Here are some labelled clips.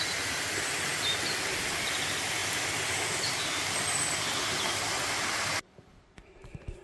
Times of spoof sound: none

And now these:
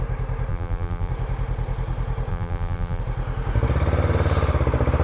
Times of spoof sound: 0.5-1.1 (vocoder, BigVGAN v2); 2.3-3.0

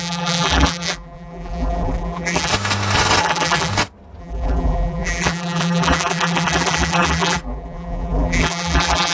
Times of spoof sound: 0.0-2.5 (vocoder, BigVGAN v2); 3.2-3.7; 4.2-9.1

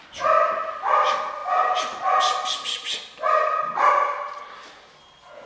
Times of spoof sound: none

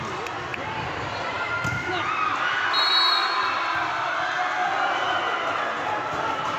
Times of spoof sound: 0.5-1.4 (vocoder, BigVGAN v2)

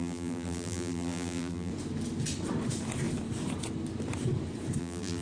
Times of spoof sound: 0.0-1.7 (vocoder, BigVGAN v2); 4.8-5.2

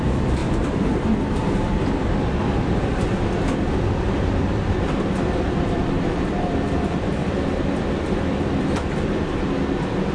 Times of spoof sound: 0.0-7.2 (vocoder, BigVGAN v2); 8.2-10.1

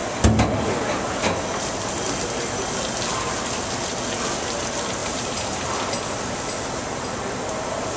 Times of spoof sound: 5.0-5.7 (vocoder, BigVGAN v2)